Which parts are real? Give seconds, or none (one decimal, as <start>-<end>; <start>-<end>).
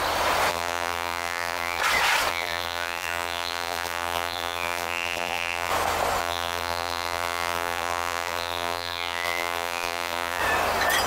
0.0-0.5; 1.8-2.3; 5.7-6.2; 10.4-11.1